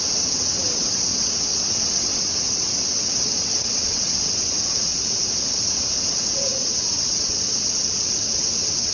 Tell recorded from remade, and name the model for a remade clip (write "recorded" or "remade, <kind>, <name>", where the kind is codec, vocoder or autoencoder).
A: remade, vocoder, WaveNeXt